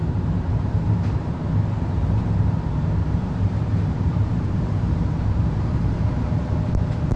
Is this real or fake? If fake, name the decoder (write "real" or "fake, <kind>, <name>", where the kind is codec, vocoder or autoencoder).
fake, vocoder, BigVGAN v2